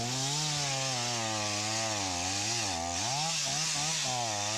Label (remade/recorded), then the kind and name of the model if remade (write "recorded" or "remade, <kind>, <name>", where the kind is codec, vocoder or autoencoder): recorded